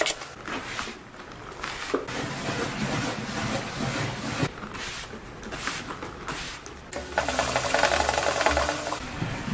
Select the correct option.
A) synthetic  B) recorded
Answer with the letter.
B